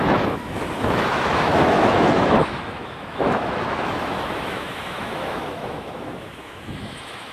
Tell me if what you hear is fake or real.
fake